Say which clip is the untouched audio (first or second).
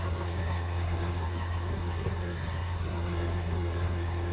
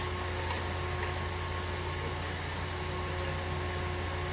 second